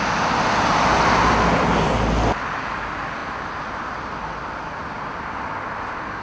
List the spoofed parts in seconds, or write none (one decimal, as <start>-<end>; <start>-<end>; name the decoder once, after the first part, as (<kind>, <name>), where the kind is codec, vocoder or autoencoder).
none